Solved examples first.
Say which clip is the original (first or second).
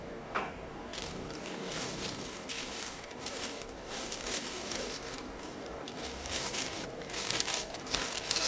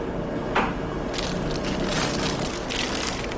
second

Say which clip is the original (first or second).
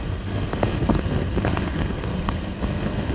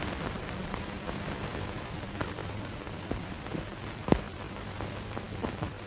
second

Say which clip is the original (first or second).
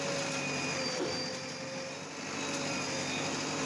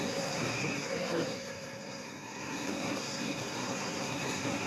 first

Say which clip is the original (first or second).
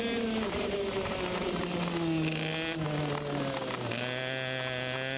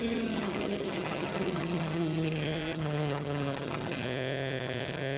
first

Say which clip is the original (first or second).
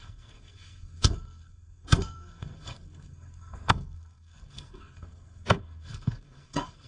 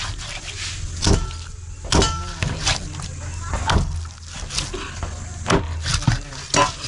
second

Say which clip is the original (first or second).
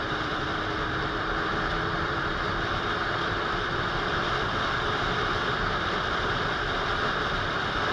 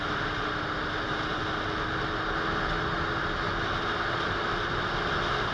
second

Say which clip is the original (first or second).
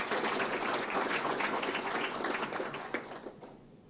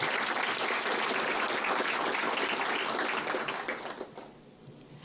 second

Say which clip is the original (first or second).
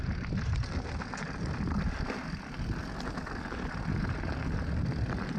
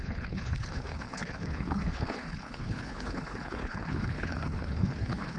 first